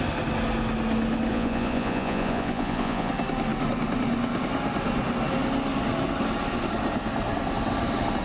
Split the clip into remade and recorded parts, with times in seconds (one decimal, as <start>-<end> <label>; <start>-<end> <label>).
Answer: 0.0-1.3 recorded; 1.3-3.1 remade; 3.1-8.2 recorded